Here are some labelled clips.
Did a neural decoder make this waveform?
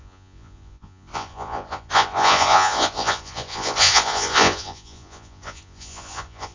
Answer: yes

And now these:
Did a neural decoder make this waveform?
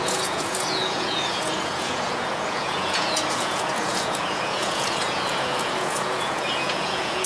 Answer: yes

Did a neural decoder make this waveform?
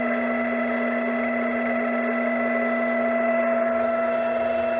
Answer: no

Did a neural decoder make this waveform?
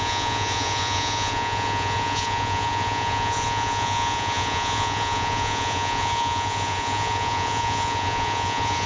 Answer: yes